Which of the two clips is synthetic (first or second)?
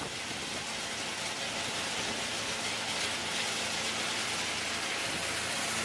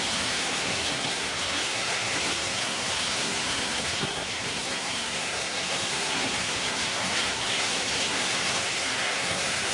second